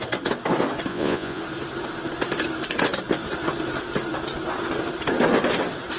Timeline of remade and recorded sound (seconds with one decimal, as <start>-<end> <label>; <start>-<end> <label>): 0.0-0.9 recorded; 0.9-1.4 remade; 1.4-6.0 recorded